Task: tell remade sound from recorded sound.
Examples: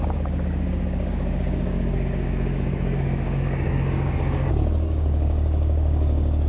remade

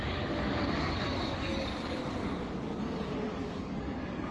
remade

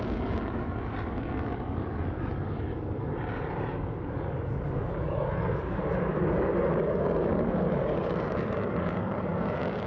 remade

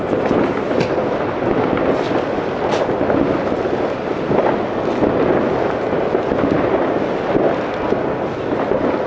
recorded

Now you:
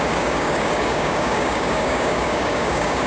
remade